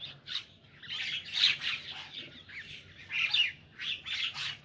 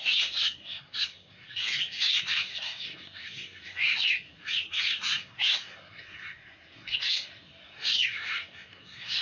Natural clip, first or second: first